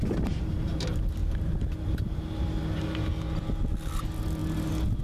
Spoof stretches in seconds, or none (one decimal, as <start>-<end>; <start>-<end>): none